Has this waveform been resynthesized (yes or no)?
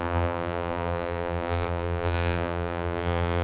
yes